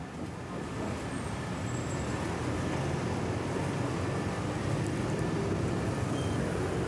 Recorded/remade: recorded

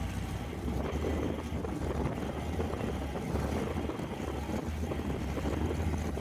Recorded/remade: recorded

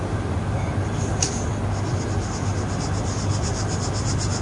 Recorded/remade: recorded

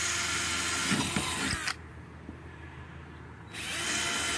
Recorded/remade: recorded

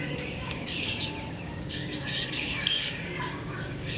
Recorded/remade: remade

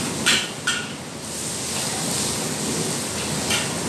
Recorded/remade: recorded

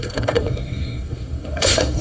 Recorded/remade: remade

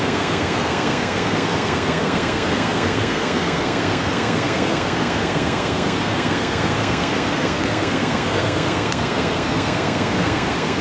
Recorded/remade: remade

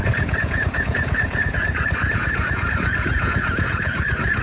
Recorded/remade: remade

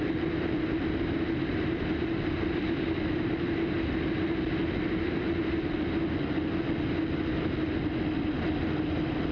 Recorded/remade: recorded